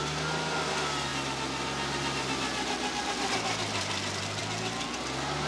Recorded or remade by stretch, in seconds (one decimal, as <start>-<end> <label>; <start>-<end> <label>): 0.0-5.5 recorded